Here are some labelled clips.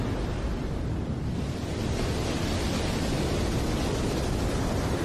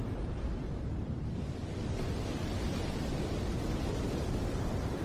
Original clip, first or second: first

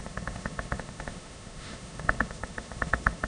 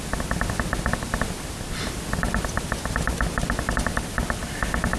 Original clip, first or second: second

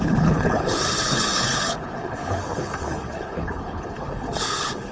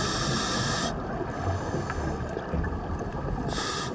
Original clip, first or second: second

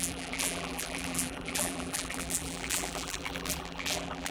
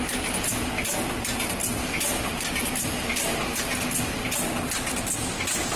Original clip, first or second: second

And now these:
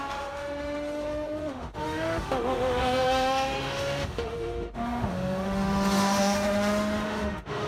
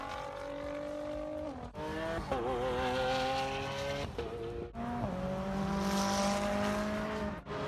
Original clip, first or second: second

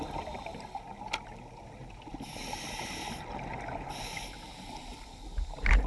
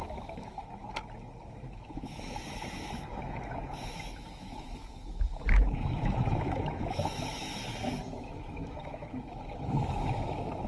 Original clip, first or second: first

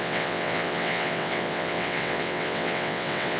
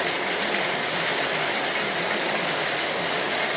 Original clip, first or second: second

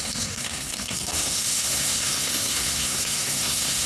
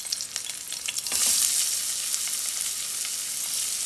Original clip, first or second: second